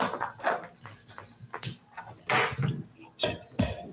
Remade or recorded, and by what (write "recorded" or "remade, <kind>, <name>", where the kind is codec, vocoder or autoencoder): recorded